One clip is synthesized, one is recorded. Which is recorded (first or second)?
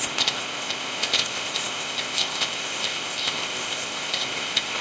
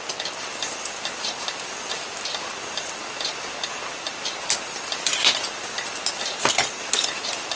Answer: second